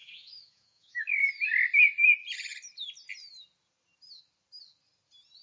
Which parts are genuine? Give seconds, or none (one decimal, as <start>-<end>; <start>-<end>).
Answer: 1.0-5.4